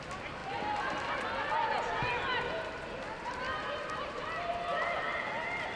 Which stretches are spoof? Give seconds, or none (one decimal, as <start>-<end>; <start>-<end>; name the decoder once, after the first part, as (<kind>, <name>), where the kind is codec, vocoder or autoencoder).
none